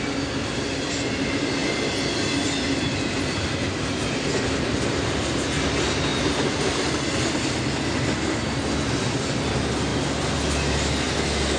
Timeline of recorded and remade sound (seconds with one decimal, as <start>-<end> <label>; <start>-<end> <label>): 0.0-11.6 recorded